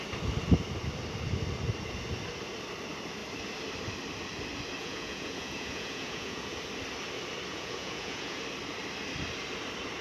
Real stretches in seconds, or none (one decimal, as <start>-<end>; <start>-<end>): 0.0-4.8; 6.6-7.5; 8.4-10.0